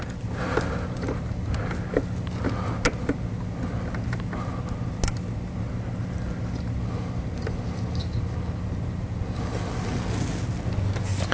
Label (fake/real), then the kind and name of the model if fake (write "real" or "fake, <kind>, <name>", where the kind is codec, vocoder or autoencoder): real